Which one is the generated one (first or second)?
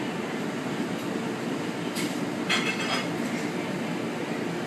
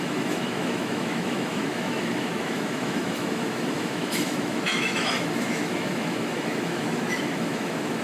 second